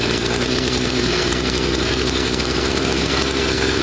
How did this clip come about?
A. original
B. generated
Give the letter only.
B